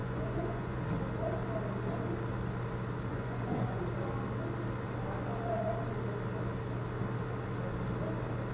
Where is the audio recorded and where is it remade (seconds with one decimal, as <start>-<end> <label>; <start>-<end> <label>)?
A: 0.0-0.8 remade; 0.8-3.1 recorded; 3.1-3.8 remade; 3.8-8.5 recorded